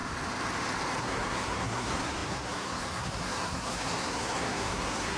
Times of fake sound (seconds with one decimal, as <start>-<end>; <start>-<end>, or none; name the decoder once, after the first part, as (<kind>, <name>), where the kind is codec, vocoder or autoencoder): 1.0-5.2 (codec, SNAC)